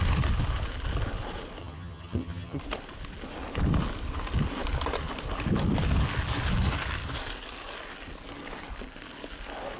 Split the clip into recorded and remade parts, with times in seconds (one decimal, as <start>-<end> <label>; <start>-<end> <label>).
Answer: 0.0-1.6 recorded; 1.6-2.6 remade; 2.6-9.8 recorded